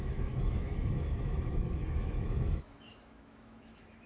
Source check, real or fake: fake